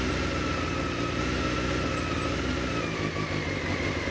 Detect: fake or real real